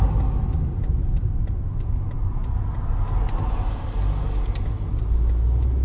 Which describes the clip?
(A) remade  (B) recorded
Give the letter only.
B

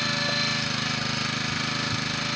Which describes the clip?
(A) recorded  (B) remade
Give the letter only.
A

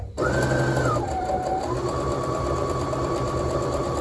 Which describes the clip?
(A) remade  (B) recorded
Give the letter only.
B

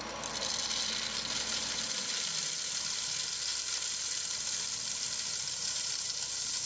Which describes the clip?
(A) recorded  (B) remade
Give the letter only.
A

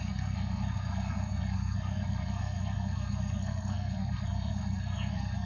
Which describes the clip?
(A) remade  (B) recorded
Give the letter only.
A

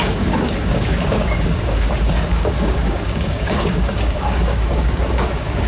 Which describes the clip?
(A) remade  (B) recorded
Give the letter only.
A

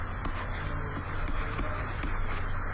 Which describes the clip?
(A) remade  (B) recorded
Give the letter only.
A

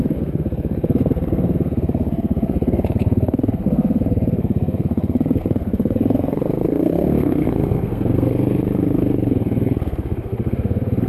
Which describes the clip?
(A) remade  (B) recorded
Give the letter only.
A